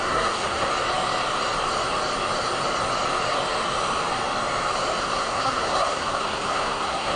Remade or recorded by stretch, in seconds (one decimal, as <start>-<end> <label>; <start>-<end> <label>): 0.0-0.7 remade; 0.7-5.0 recorded; 5.0-7.2 remade